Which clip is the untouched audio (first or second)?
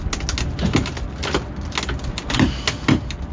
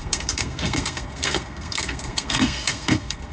first